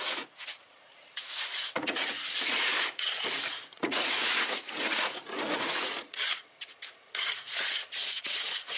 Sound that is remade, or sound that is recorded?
remade